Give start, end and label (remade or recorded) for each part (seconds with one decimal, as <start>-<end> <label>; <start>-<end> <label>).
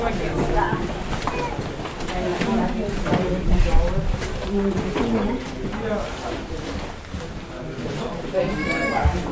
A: 0.0-9.3 recorded